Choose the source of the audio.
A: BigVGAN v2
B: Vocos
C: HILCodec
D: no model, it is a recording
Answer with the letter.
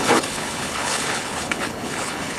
C